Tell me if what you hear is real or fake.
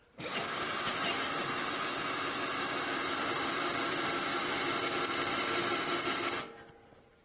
real